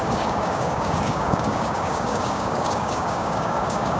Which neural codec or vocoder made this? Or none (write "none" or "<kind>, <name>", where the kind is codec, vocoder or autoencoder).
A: codec, DAC